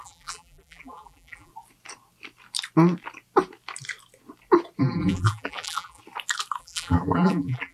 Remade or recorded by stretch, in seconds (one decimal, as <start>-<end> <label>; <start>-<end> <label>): 0.0-1.5 remade; 1.5-4.8 recorded; 4.8-6.0 remade; 6.0-6.6 recorded; 6.6-7.7 remade